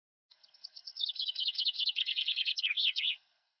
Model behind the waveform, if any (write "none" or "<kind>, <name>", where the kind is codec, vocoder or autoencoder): codec, SNAC